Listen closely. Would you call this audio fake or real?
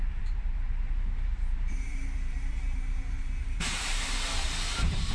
fake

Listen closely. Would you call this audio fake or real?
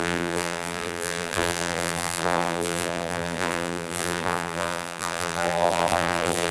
fake